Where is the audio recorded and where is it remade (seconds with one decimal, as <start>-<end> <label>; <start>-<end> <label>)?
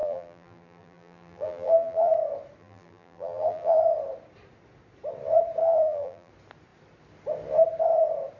0.0-2.1 remade; 2.1-2.6 recorded; 2.6-3.8 remade; 3.8-5.6 recorded; 5.6-6.3 remade; 6.3-8.4 recorded